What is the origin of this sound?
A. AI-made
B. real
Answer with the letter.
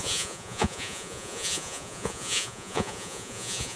A